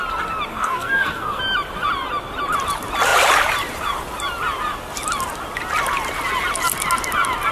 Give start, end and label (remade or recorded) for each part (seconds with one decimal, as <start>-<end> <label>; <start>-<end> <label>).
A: 0.0-0.5 recorded; 0.5-1.4 remade; 1.4-7.5 recorded